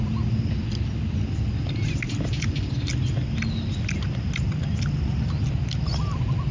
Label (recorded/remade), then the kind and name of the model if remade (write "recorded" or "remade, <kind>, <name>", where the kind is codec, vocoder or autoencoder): recorded